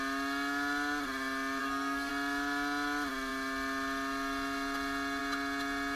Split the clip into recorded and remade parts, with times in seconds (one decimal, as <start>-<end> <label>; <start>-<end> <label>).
0.0-1.6 recorded; 1.6-2.1 remade; 2.1-6.0 recorded